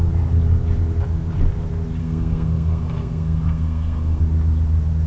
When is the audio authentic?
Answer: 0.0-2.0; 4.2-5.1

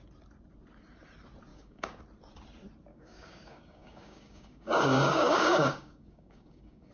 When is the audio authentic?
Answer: 0.0-1.5; 2.0-2.9

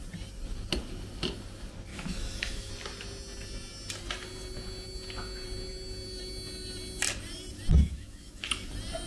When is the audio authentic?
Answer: 0.0-1.9; 2.7-7.8; 8.5-9.1

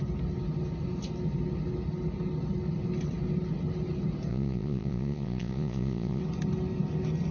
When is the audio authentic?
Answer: 0.0-4.3; 6.2-7.3

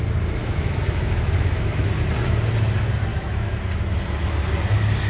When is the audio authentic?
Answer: 0.0-0.4; 1.9-3.1; 3.6-5.1

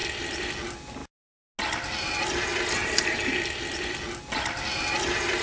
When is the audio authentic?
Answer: 0.0-5.4

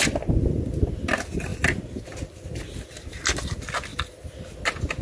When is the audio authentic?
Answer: 0.0-3.9; 4.4-5.0